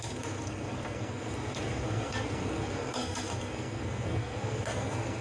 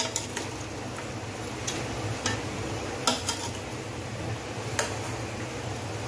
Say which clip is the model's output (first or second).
first